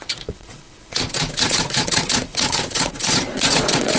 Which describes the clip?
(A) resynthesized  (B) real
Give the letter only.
A